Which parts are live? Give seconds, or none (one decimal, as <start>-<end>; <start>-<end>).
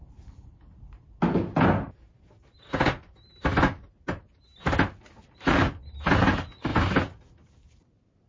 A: 0.4-4.6; 6.7-7.3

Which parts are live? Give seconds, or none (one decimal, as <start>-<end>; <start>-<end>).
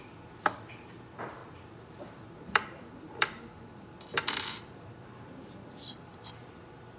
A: none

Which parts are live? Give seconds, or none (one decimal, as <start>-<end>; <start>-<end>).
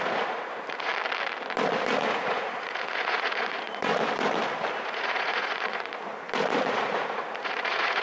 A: 0.9-2.0; 3.9-4.7; 6.1-6.6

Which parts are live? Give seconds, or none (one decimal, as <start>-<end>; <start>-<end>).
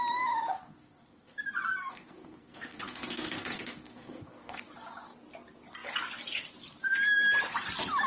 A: 0.0-0.5; 1.4-1.8; 4.6-8.1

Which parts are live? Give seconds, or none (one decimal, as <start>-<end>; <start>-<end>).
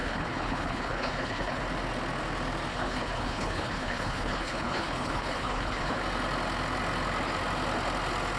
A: 1.6-2.7; 6.0-8.4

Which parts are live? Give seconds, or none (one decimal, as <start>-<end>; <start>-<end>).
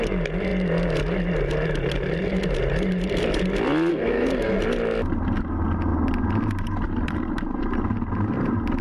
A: 0.0-3.9; 4.6-8.8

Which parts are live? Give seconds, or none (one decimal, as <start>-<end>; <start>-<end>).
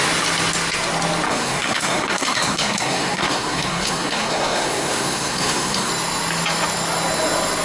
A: 0.0-1.3; 5.9-7.6